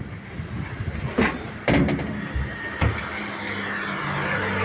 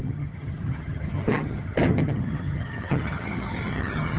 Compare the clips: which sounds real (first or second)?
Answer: first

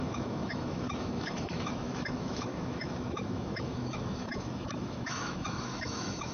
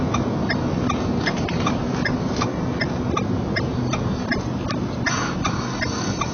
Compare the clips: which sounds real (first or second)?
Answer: second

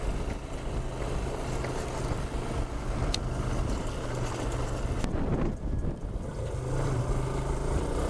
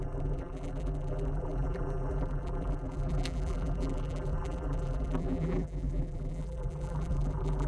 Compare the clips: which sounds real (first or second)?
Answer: first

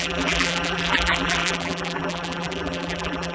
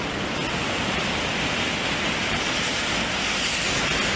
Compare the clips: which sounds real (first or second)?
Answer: second